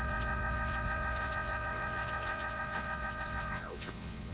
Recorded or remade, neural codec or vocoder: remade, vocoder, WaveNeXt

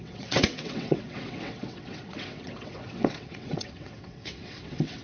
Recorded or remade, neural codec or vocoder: remade, vocoder, WaveNeXt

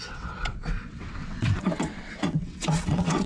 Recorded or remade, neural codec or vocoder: remade, vocoder, WaveNeXt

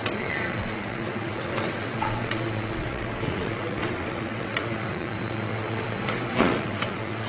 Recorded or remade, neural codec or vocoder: remade, vocoder, WaveNeXt